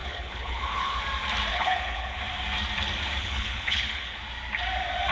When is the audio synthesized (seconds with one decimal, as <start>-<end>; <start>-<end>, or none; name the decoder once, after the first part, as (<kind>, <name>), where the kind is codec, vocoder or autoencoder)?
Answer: 0.0-1.0 (codec, HILCodec); 1.5-2.2; 3.2-4.2